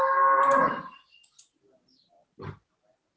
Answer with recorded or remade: recorded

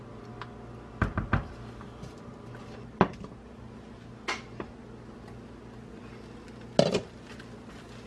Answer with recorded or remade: recorded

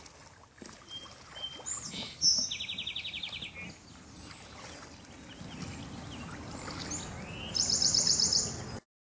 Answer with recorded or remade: recorded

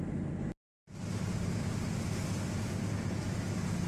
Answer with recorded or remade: recorded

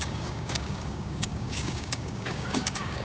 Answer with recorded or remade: remade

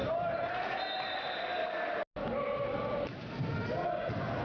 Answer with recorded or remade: recorded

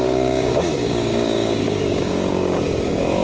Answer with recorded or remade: remade